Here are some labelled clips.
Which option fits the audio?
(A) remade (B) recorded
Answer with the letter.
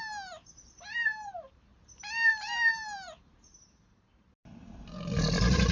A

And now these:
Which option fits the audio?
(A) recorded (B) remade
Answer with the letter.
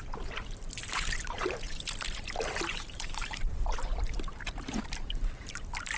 B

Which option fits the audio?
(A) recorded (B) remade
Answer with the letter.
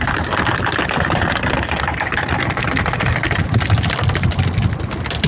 A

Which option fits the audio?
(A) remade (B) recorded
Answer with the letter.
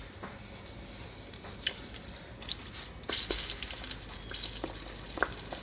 B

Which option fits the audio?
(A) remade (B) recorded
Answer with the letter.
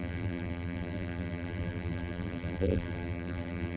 A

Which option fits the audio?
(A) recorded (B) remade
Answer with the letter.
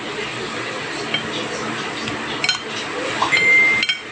A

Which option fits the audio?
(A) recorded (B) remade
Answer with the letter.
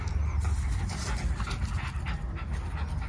A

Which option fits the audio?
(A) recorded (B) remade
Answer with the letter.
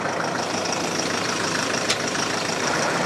B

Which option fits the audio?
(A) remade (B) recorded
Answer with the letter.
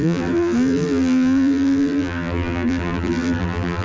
A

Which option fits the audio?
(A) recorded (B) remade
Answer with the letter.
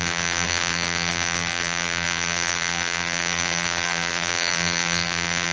B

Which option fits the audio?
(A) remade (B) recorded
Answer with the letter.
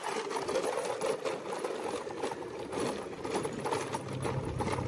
B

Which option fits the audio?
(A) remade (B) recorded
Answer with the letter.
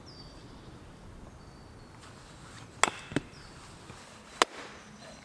B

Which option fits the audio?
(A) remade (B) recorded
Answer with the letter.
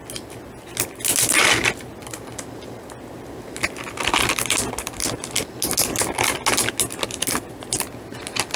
B